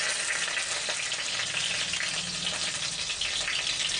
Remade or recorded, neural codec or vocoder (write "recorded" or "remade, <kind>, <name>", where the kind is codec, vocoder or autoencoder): recorded